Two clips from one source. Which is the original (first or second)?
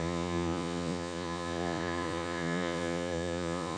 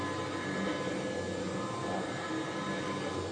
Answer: second